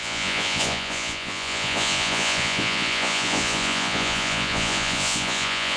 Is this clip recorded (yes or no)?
no